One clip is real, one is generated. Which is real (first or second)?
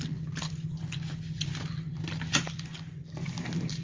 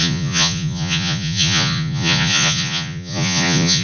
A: first